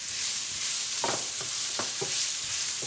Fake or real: fake